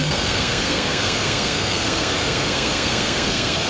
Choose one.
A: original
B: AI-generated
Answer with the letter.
B